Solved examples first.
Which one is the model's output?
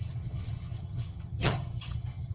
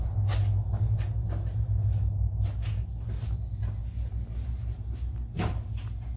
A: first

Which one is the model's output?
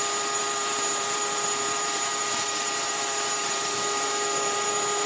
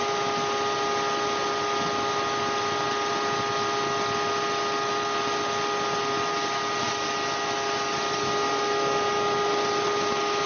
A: first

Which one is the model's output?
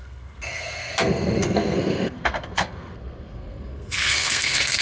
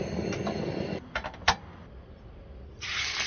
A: first